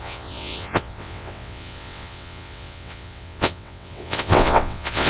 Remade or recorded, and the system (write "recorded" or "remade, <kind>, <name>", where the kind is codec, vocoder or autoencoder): remade, vocoder, WaveNeXt